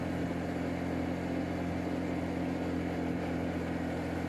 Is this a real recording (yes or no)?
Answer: yes